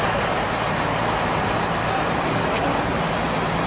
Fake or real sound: real